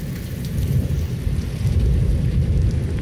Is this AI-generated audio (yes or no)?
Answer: no